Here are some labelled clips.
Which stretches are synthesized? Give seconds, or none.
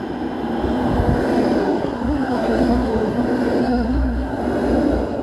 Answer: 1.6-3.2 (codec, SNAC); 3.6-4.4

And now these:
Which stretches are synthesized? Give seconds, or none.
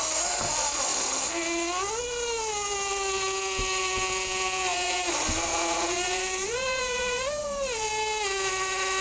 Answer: 3.8-5.1 (vocoder, Vocos); 5.5-7.9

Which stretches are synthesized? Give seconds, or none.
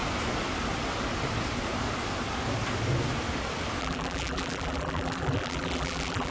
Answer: 3.8-6.3 (vocoder, BigVGAN v2)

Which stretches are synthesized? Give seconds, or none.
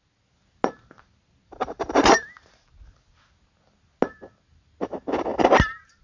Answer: 1.4-2.7 (vocoder, BigVGAN v2)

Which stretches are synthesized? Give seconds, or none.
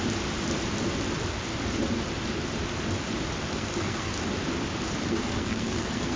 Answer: 3.5-4.1 (codec, SNAC); 5.0-6.2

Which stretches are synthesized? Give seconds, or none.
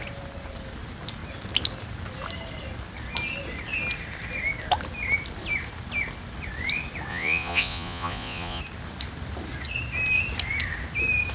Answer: 7.1-8.6 (vocoder, Vocos)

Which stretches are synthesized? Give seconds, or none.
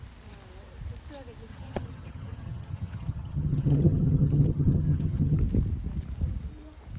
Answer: 1.5-5.4 (vocoder, HiFi-GAN)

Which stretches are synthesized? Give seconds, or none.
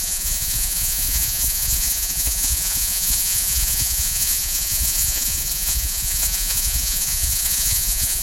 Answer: 0.0-8.2 (vocoder, Vocos)